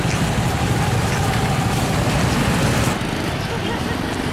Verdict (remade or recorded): recorded